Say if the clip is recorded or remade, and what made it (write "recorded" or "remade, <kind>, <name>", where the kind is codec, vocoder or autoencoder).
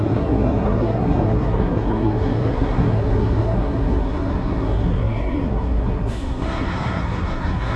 remade, codec, SNAC